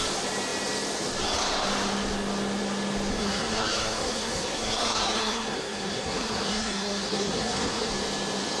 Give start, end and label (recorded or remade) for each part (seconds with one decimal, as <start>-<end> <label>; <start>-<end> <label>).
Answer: 0.0-3.1 recorded; 3.1-7.9 remade; 7.9-8.6 recorded